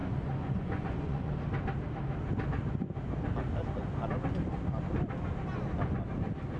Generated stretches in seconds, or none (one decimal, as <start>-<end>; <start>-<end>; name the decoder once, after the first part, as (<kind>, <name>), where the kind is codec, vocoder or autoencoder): 0.0-1.3 (vocoder, Vocos)